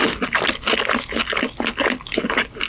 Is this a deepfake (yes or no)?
no